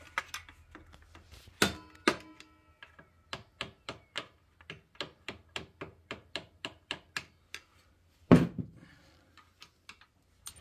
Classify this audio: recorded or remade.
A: recorded